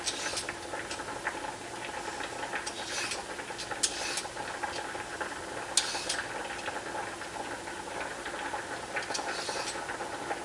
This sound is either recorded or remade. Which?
recorded